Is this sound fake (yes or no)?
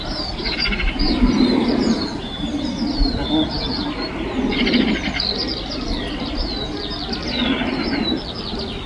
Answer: no